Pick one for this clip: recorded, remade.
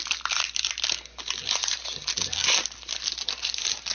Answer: recorded